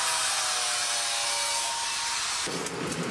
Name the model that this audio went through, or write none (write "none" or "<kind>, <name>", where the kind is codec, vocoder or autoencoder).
none